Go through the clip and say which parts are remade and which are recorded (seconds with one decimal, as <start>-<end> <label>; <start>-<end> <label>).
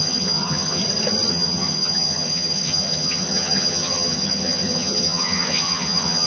0.0-0.8 remade; 0.8-1.3 recorded; 1.3-6.3 remade